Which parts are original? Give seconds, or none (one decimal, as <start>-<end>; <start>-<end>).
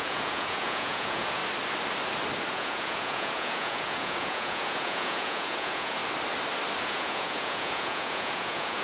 1.4-2.5; 6.0-6.8